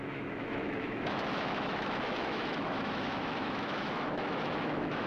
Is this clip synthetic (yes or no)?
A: yes